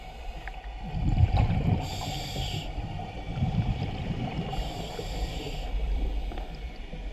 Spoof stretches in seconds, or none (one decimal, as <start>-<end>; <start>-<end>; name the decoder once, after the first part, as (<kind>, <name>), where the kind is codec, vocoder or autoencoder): 1.2-4.2 (vocoder, BigVGAN v2)